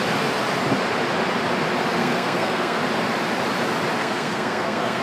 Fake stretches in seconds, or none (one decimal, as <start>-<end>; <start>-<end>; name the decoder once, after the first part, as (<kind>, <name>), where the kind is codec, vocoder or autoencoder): 2.0-2.8 (codec, SNAC); 4.0-5.0